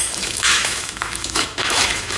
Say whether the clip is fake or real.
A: fake